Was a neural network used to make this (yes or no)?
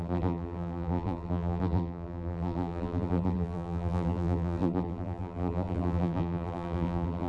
yes